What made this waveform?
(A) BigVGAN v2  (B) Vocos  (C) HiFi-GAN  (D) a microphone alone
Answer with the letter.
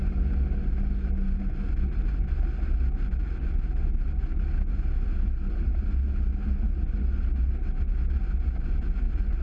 D